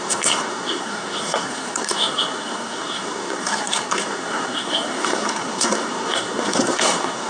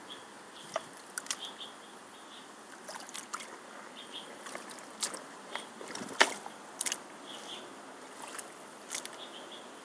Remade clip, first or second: first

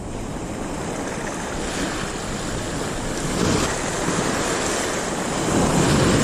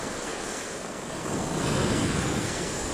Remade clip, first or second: second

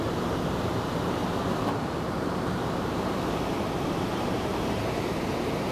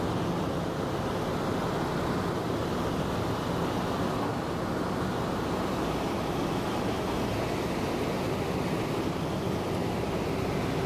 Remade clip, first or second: first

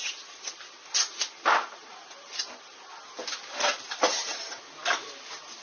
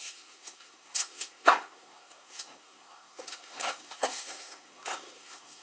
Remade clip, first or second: second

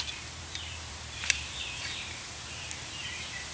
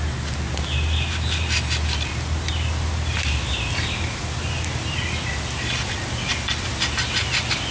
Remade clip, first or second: first